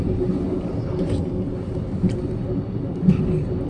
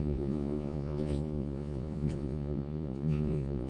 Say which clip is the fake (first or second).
second